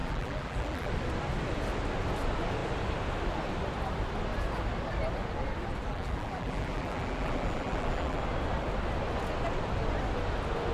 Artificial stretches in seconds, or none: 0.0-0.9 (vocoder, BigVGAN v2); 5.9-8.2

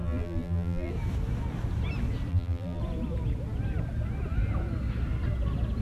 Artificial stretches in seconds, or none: 0.0-0.9 (vocoder, BigVGAN v2); 2.3-2.8

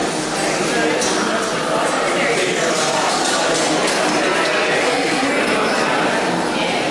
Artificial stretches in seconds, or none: 4.8-5.3 (codec, SNAC)